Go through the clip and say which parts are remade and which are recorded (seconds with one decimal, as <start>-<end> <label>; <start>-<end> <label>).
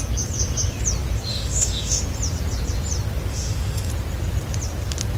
0.0-1.3 recorded; 1.3-2.0 remade; 2.0-3.3 recorded; 3.3-3.9 remade; 3.9-5.2 recorded